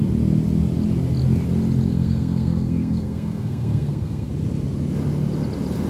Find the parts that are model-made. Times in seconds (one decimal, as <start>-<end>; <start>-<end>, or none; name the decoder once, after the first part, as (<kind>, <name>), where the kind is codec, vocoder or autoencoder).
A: 1.9-4.3 (codec, SNAC)